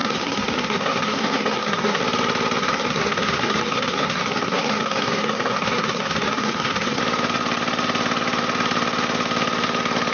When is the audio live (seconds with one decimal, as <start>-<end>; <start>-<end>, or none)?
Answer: 2.0-2.6; 7.0-10.1